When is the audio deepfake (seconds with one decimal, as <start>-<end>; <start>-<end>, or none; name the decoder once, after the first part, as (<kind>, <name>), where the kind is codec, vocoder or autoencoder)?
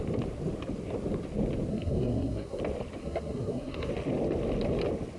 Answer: 1.7-2.6 (codec, SNAC); 3.0-3.9